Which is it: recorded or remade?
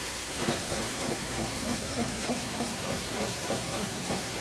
remade